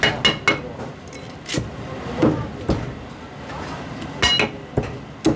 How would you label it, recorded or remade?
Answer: recorded